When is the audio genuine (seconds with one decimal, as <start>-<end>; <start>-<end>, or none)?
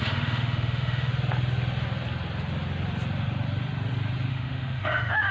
1.1-4.3